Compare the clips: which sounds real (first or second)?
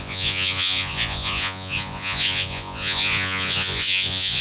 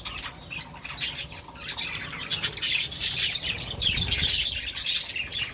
second